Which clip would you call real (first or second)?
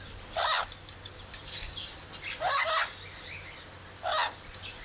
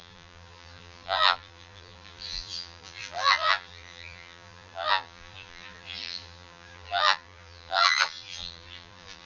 first